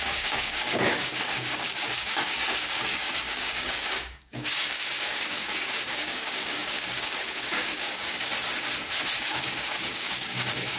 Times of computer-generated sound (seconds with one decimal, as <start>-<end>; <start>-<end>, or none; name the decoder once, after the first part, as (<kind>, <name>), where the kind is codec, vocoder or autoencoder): 0.0-8.3 (codec, DAC); 9.2-10.8